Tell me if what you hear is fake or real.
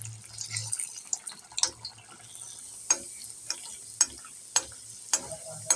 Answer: real